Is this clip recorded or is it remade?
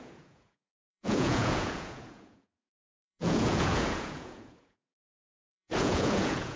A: remade